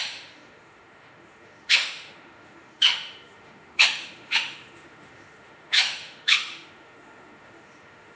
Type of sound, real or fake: fake